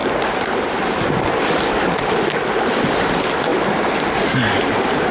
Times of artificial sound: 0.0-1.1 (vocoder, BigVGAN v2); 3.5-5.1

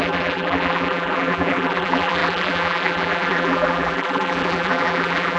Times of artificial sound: 0.0-5.4 (vocoder, BigVGAN v2)

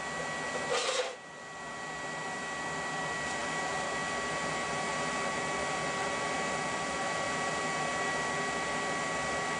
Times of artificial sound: 3.4-5.4 (vocoder, BigVGAN v2); 6.6-7.5

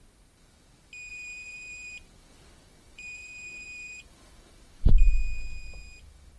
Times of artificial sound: 1.1-4.9 (vocoder, BigVGAN v2)

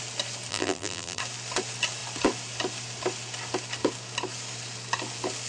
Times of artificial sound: 0.5-1.2 (vocoder, BigVGAN v2)

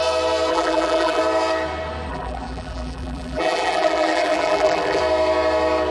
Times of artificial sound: 0.5-1.2 (vocoder, BigVGAN v2); 2.1-5.0

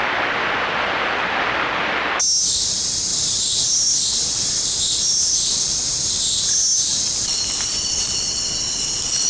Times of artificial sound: 0.0-2.2 (vocoder, BigVGAN v2); 3.1-4.6; 5.1-5.8; 6.9-7.8